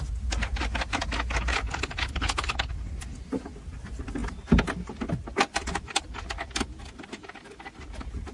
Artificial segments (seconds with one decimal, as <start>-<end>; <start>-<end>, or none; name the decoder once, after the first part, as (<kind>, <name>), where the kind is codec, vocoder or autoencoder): 1.5-2.7 (codec, HILCodec)